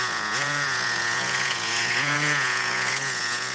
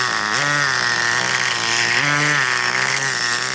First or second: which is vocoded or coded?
first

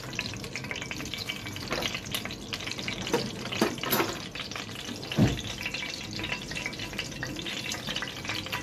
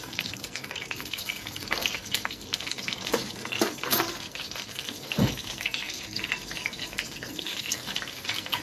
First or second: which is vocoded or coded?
second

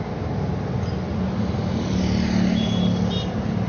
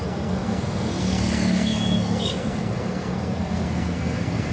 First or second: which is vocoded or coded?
second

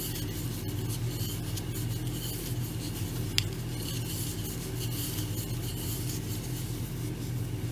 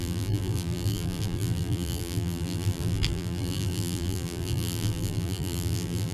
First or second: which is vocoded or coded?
second